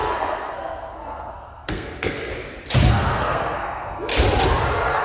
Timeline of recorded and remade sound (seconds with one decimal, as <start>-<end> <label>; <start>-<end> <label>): 0.0-2.3 remade; 2.3-2.9 recorded; 2.9-4.1 remade; 4.1-5.0 recorded